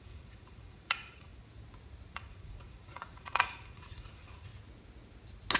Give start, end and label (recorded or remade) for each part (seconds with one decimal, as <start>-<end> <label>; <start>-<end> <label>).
0.0-1.3 remade; 1.3-2.1 recorded; 2.1-4.5 remade; 4.5-5.6 recorded